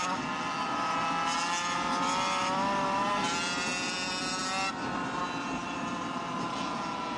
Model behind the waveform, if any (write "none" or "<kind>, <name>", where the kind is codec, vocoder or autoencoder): none